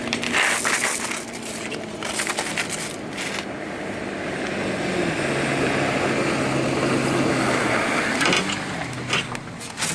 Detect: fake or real real